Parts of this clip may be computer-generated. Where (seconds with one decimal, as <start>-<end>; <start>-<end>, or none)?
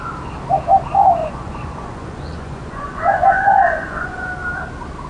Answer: 1.2-4.3